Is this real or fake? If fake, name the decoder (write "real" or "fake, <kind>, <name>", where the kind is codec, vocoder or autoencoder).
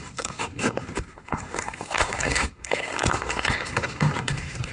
fake, codec, SNAC